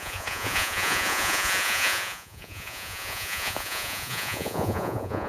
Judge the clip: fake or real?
fake